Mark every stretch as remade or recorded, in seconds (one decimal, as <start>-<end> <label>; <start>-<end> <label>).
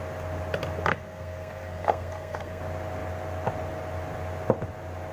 0.0-0.9 recorded; 0.9-2.6 remade; 2.6-5.1 recorded